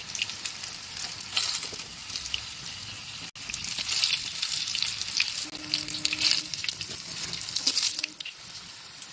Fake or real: real